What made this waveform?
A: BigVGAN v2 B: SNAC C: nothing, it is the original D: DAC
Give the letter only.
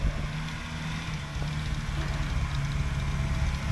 C